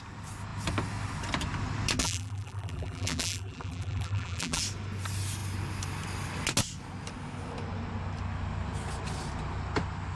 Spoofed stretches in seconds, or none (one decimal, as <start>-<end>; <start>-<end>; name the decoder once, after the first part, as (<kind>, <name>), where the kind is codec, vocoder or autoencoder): 2.0-4.6 (vocoder, BigVGAN v2)